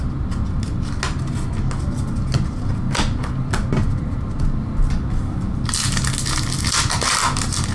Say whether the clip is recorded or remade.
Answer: recorded